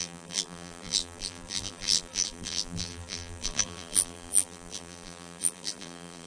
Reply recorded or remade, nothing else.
remade